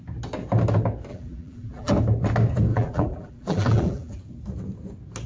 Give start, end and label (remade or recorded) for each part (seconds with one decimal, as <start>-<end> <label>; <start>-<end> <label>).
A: 0.0-1.1 recorded; 1.1-1.9 remade; 1.9-2.7 recorded; 2.7-4.2 remade; 4.2-5.3 recorded